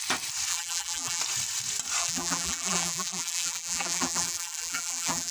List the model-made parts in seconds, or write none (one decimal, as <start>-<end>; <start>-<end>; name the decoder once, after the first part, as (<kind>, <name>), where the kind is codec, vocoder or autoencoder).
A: 0.5-1.2 (vocoder, BigVGAN v2); 2.0-5.3